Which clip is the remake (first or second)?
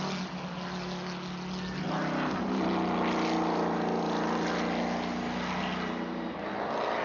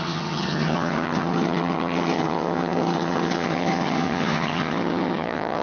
second